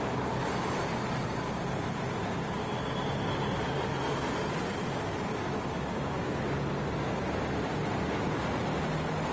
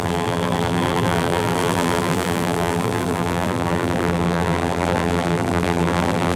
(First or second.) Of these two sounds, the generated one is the second